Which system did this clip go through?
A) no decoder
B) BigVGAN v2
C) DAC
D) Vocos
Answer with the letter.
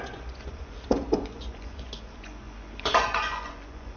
D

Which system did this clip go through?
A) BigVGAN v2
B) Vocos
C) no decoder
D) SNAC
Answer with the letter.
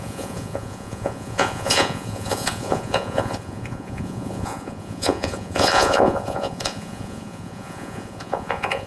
B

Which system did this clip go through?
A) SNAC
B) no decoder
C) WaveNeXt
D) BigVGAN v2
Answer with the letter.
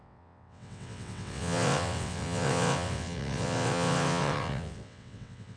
C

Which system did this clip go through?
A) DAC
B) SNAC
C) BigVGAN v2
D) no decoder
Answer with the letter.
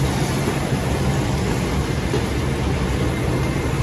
D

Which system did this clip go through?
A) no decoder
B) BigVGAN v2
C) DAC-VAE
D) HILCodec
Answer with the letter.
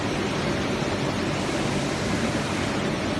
A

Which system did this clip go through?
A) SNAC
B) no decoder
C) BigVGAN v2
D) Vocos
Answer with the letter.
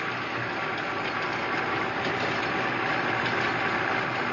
B